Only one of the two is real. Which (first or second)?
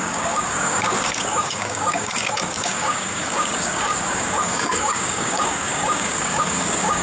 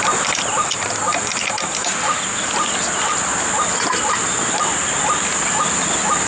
second